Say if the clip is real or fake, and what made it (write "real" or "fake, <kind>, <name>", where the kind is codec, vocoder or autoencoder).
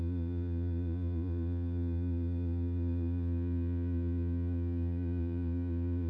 fake, vocoder, Vocos